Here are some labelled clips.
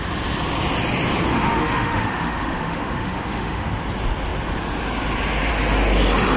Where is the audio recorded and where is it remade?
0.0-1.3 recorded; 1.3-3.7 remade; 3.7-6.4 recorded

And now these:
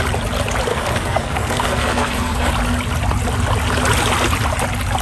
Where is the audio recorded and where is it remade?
0.0-0.7 recorded; 0.7-2.5 remade; 2.5-5.0 recorded

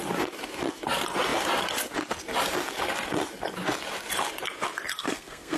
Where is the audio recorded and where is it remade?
0.0-5.0 recorded; 5.0-5.6 remade

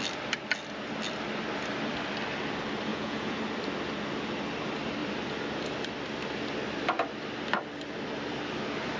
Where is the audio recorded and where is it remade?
0.0-2.9 recorded; 2.9-3.4 remade; 3.4-9.0 recorded

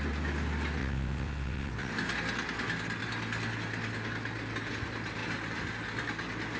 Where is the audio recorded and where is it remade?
0.0-0.8 recorded; 0.8-1.9 remade; 1.9-6.6 recorded

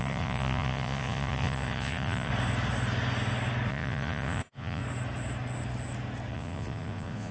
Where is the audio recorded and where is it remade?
0.0-2.3 remade; 2.3-3.7 recorded; 3.7-4.8 remade; 4.8-6.3 recorded; 6.3-7.3 remade

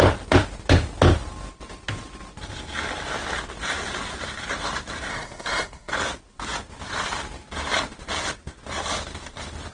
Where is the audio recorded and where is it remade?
0.0-5.1 recorded; 5.1-5.9 remade; 5.9-9.7 recorded